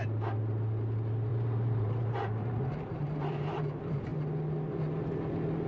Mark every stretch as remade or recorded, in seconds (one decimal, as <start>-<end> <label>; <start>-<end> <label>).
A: 0.0-1.3 recorded; 1.3-3.6 remade; 3.6-5.7 recorded